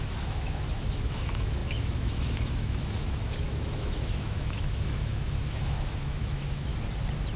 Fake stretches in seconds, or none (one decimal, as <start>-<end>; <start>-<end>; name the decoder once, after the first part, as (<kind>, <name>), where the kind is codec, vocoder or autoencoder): 0.0-6.7 (autoencoder, DAC-VAE)